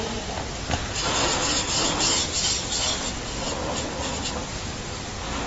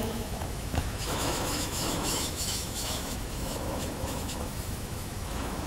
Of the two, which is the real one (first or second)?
first